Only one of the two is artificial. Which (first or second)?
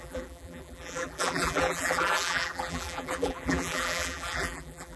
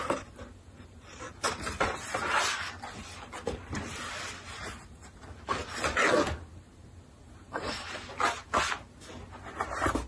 first